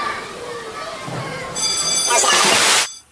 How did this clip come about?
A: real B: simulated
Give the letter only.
A